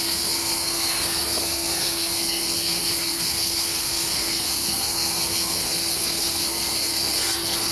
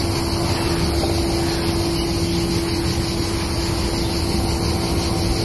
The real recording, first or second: second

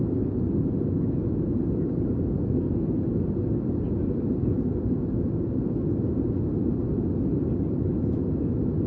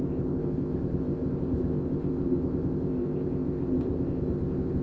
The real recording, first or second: first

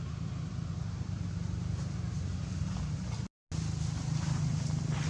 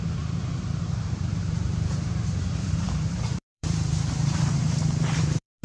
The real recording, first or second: first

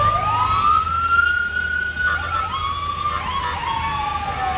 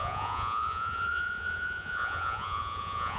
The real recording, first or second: first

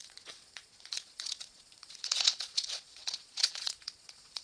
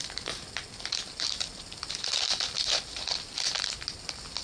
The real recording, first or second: second